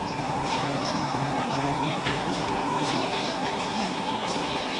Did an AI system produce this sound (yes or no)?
yes